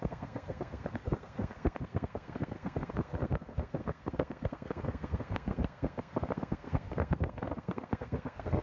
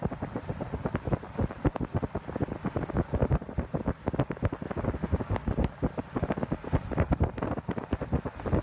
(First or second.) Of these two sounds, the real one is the second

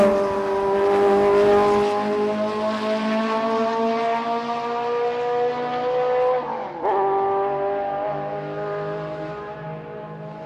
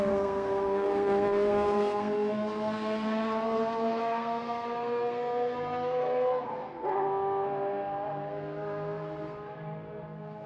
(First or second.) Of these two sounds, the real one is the first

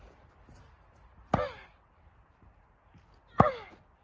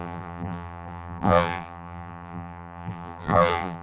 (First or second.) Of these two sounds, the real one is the first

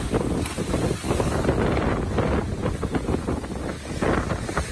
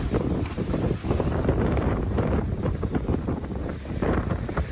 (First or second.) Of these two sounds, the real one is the first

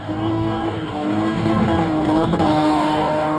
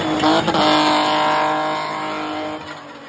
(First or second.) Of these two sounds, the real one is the second